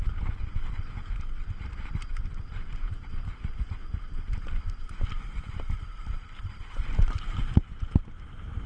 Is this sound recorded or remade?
recorded